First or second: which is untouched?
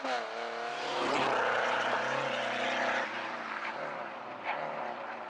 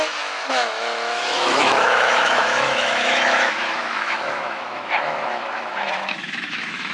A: first